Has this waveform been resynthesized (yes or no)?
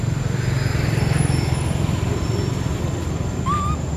no